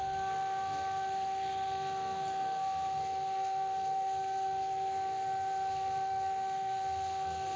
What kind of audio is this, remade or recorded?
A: remade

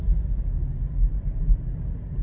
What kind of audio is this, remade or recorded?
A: recorded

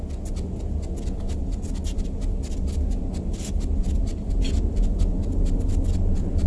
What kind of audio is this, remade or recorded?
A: recorded